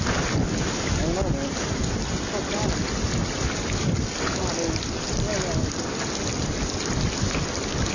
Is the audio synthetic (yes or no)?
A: no